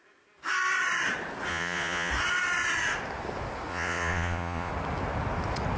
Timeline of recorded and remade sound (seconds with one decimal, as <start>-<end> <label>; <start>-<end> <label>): 0.0-1.5 recorded; 1.5-2.1 remade; 2.1-3.7 recorded; 3.7-4.7 remade; 4.7-5.8 recorded